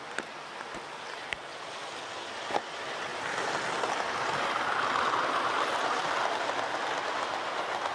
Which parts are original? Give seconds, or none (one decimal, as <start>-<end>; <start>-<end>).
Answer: 0.0-7.9